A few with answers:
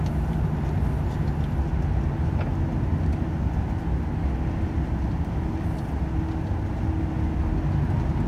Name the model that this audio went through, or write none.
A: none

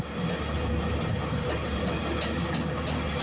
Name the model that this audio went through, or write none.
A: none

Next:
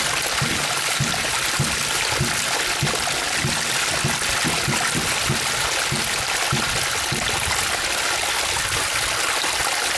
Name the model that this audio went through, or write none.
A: none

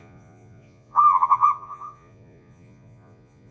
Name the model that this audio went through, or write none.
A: vocoder, Vocos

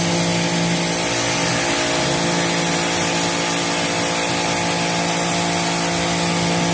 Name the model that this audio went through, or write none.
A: none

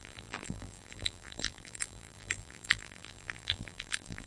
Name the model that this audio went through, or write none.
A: vocoder, BigVGAN v2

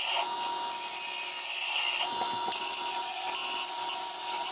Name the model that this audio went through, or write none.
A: none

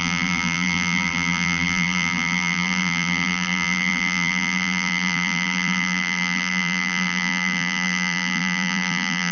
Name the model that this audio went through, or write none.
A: vocoder, BigVGAN v2